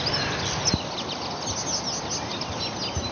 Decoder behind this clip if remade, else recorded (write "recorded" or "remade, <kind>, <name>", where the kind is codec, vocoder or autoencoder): recorded